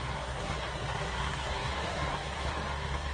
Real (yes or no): no